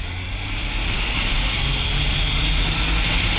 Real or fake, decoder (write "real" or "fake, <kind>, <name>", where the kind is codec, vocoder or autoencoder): real